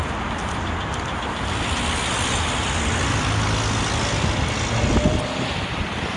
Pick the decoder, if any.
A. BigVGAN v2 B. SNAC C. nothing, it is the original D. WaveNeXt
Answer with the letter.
C